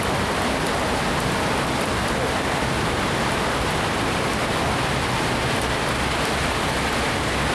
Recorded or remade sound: recorded